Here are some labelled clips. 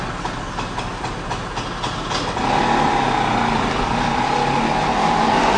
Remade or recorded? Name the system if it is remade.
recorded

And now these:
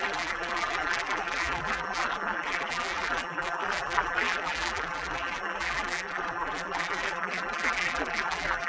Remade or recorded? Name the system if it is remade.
remade, vocoder, BigVGAN v2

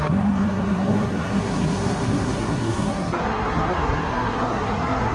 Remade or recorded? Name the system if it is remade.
remade, codec, SNAC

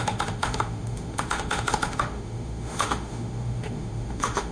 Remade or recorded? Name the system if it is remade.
remade, autoencoder, DAC-VAE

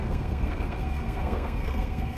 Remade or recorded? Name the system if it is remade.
remade, codec, SNAC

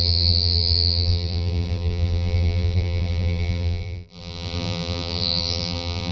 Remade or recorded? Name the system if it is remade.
remade, vocoder, BigVGAN v2